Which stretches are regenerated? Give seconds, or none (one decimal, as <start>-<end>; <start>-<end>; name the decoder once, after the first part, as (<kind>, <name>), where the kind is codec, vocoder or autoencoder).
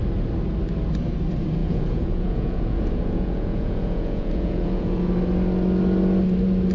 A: 1.6-5.0 (vocoder, Vocos)